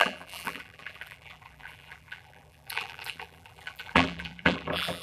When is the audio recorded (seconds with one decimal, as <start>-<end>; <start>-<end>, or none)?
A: none